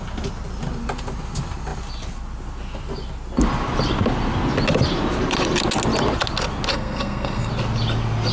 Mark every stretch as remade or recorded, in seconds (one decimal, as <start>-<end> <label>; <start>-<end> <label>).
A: 0.0-6.7 recorded; 6.7-7.5 remade; 7.5-8.3 recorded